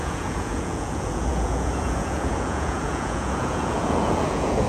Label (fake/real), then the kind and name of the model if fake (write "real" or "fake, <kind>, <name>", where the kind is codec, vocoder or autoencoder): fake, vocoder, Vocos